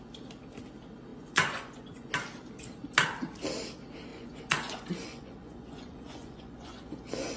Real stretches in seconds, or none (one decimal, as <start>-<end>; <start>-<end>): 0.0-1.1; 2.1-4.1